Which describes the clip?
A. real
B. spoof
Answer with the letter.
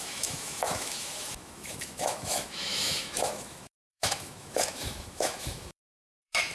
B